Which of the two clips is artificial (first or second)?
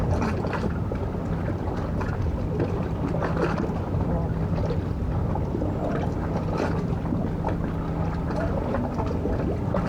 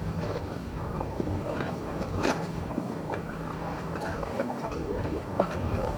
second